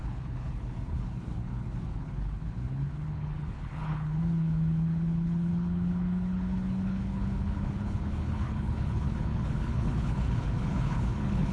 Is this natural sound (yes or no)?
no